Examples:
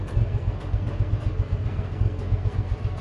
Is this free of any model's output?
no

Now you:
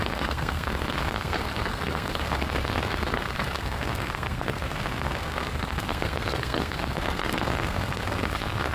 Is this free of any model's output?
no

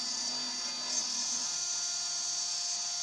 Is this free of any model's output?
yes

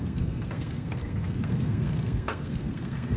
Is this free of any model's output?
no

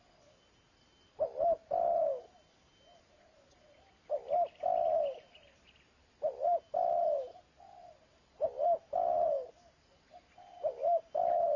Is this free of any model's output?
yes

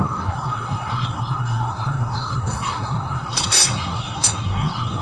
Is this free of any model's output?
no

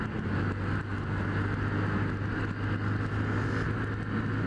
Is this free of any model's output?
yes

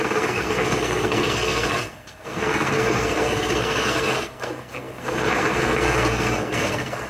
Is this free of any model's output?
no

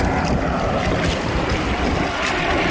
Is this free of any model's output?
yes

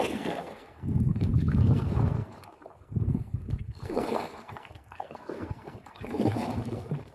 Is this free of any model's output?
no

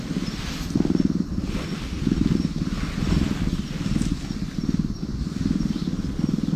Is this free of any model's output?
yes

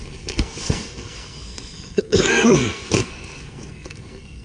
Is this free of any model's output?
no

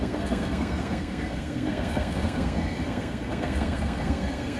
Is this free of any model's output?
no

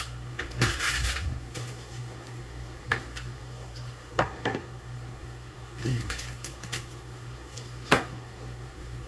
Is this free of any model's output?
no